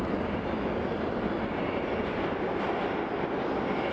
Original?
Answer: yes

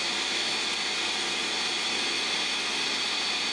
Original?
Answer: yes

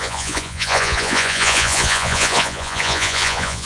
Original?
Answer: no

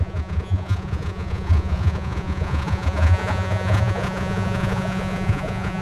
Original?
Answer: no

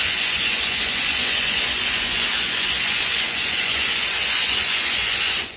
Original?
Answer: no